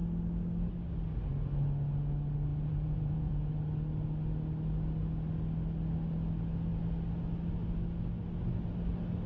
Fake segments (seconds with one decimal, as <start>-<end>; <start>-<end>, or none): 2.5-3.5